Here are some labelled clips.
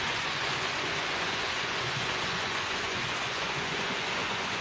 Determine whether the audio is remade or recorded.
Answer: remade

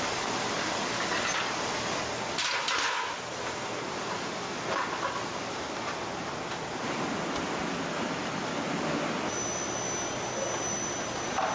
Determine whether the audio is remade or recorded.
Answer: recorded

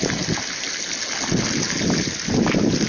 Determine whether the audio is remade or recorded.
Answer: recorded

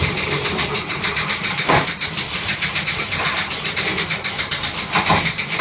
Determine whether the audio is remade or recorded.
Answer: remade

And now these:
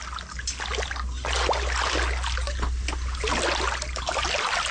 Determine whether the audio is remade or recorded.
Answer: recorded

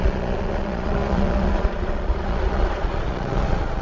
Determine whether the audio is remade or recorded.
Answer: remade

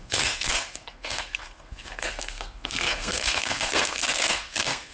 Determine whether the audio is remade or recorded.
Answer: remade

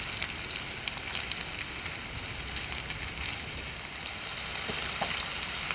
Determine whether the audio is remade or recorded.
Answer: recorded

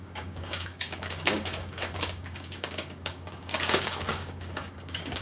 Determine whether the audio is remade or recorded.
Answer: remade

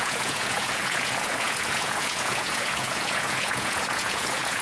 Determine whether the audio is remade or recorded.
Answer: remade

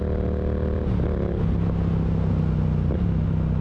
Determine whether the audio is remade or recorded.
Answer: recorded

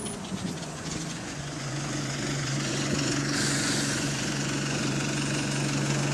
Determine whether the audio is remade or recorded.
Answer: remade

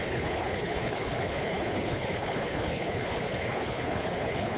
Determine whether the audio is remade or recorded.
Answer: remade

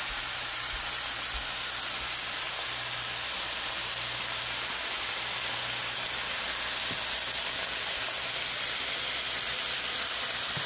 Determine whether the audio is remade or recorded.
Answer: recorded